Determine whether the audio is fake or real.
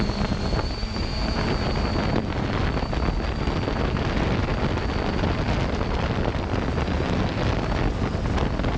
real